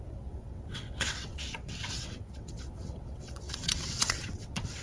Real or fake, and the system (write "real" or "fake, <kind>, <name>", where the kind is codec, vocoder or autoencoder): fake, vocoder, WaveNeXt